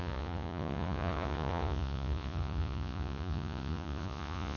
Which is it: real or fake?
fake